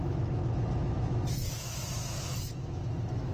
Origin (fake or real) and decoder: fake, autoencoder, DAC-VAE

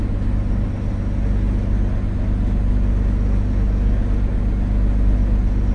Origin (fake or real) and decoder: real